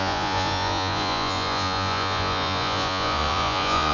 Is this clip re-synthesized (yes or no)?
yes